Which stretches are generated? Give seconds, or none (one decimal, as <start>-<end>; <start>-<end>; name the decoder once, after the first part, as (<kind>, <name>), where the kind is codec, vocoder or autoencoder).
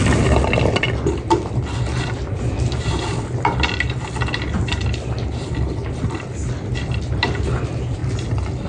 none